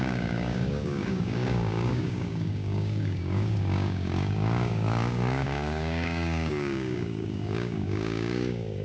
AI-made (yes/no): yes